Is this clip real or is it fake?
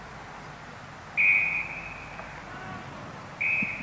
real